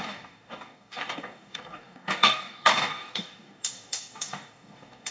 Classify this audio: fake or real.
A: fake